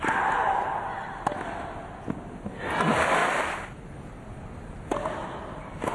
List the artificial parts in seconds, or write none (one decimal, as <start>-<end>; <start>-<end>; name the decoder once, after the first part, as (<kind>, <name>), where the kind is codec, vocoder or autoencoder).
none